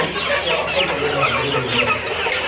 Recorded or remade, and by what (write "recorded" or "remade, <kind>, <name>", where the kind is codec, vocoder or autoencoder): recorded